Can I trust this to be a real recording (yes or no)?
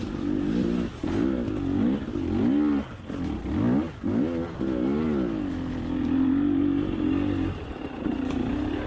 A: yes